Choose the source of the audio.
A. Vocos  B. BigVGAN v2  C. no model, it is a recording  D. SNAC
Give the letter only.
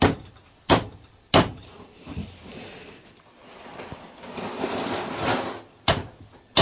C